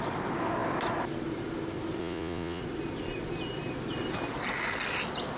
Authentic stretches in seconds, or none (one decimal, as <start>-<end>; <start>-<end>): 0.0-2.0; 2.6-5.4